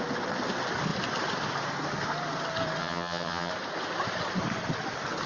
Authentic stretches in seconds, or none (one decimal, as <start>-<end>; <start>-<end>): 0.0-2.8; 3.5-5.3